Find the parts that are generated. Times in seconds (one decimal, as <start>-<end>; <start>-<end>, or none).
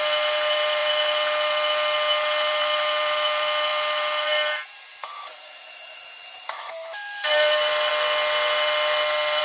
0.0-7.9